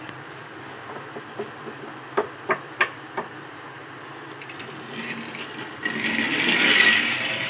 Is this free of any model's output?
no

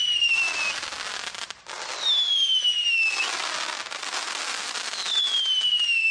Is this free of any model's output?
yes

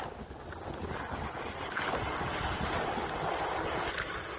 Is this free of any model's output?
yes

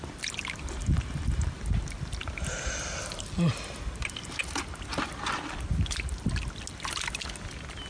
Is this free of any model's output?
yes